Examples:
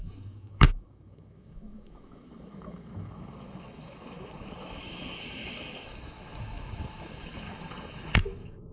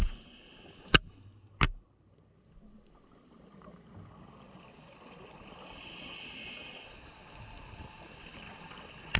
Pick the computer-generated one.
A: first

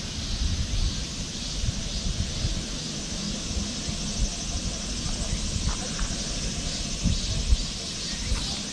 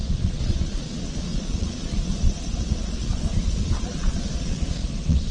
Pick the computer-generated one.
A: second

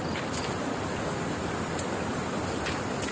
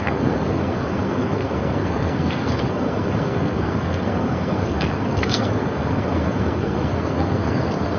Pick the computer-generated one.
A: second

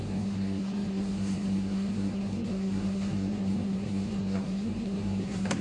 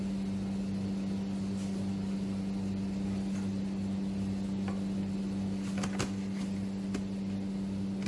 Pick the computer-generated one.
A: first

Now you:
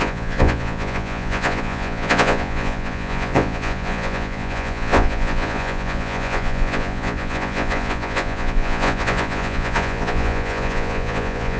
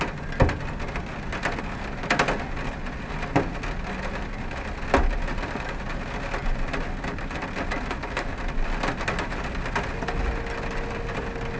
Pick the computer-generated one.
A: first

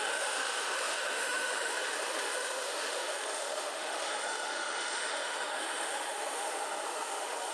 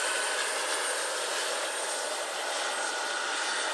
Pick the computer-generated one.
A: first